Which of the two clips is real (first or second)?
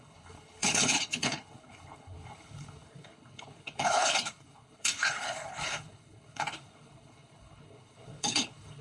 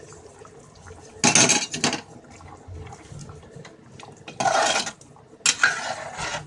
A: second